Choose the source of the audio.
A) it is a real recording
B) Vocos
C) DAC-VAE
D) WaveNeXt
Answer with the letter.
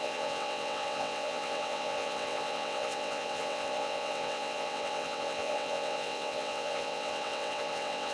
D